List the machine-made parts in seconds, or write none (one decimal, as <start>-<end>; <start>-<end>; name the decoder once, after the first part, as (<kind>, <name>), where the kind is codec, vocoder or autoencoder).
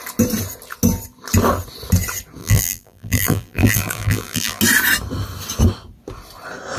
2.4-4.6 (vocoder, BigVGAN v2)